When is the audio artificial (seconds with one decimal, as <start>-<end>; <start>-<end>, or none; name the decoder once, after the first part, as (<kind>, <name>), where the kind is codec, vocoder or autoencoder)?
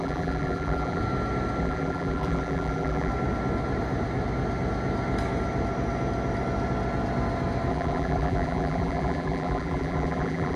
0.0-1.0 (vocoder, BigVGAN v2); 1.6-3.1; 7.7-10.6